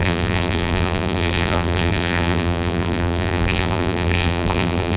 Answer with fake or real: fake